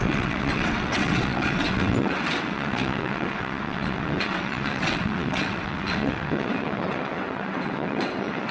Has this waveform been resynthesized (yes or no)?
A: yes